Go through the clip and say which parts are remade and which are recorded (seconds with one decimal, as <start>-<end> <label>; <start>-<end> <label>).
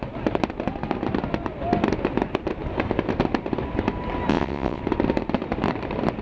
0.0-4.3 recorded; 4.3-4.8 remade; 4.8-6.2 recorded